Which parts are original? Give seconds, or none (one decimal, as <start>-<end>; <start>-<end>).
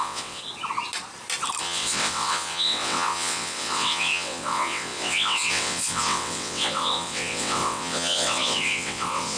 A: 0.4-1.6